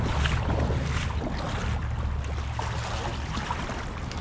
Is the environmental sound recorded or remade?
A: recorded